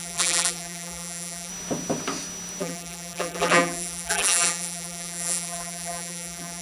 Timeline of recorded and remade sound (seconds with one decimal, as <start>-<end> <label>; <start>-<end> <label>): 0.0-1.5 remade; 1.5-2.6 recorded; 2.6-6.6 remade